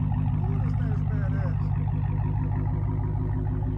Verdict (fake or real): real